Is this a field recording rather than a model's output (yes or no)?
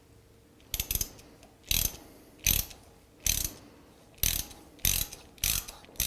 yes